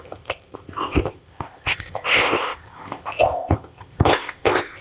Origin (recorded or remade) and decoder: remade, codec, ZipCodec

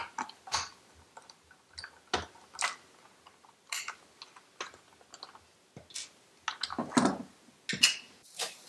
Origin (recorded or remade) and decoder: recorded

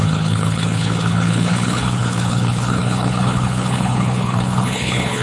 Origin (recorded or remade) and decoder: remade, codec, HILCodec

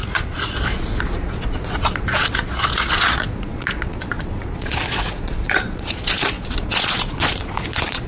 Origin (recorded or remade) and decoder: remade, vocoder, Vocos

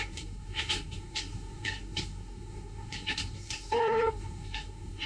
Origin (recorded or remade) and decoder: remade, codec, SNAC